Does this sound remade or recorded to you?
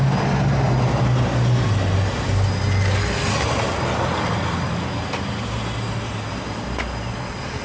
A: recorded